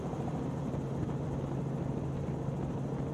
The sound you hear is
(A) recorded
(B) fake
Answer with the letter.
A